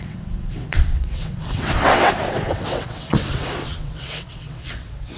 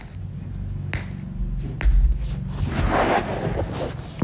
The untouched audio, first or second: second